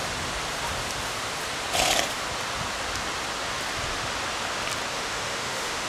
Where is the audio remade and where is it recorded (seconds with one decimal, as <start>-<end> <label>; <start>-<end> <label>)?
0.0-4.9 recorded; 4.9-5.9 remade